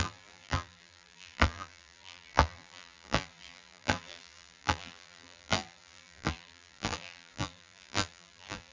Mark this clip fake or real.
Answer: fake